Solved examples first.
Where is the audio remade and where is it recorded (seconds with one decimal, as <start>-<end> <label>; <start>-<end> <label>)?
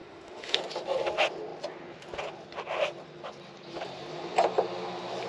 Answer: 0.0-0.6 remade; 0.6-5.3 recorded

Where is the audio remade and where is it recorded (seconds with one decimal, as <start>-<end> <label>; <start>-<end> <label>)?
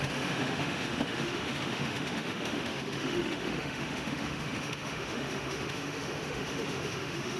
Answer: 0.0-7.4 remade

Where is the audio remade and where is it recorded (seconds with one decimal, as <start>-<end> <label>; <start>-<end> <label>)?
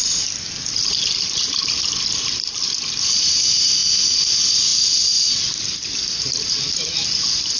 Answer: 0.0-7.6 recorded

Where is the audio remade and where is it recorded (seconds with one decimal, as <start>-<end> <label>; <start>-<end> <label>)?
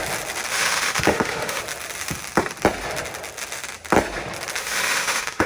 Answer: 0.0-0.5 recorded; 0.5-1.6 remade; 1.6-4.6 recorded; 4.6-5.5 remade